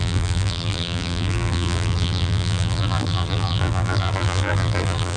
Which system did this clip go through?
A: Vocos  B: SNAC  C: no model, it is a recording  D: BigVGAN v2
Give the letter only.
D